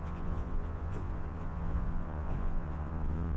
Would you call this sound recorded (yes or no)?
no